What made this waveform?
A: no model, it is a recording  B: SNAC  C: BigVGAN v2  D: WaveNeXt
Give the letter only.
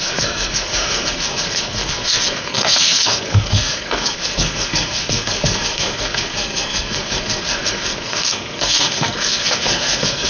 B